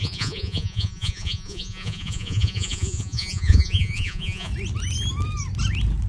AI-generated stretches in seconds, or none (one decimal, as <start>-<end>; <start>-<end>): 0.0-4.5